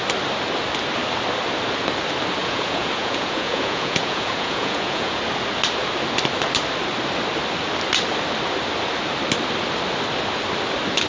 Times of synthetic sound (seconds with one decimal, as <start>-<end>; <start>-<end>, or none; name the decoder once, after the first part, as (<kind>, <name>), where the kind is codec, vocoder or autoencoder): 2.4-5.2 (vocoder, Vocos)